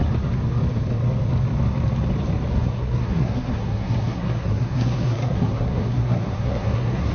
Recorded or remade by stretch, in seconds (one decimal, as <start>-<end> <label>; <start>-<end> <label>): 0.0-2.5 recorded; 2.5-7.1 remade